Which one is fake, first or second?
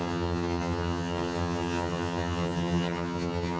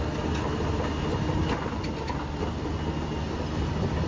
first